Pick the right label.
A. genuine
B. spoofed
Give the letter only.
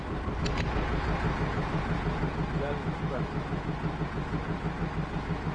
A